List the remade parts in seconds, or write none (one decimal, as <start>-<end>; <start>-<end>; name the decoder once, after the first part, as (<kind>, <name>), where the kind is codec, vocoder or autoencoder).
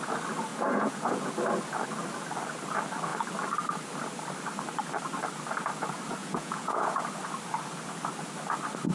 0.5-1.3 (vocoder, Vocos); 6.2-7.0